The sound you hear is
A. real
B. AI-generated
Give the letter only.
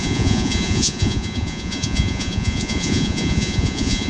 B